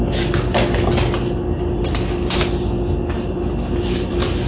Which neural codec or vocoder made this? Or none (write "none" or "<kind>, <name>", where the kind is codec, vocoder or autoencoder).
none